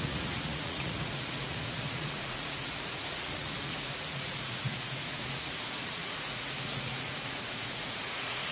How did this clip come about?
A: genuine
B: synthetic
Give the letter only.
B